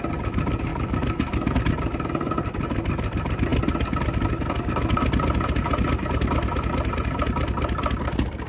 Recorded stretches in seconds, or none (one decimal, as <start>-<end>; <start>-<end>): 0.0-0.7; 1.6-8.5